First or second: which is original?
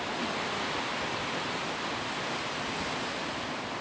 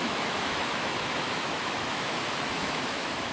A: first